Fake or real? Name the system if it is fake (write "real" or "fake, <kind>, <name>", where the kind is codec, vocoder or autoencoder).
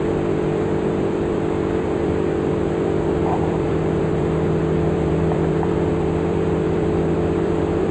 fake, vocoder, BigVGAN v2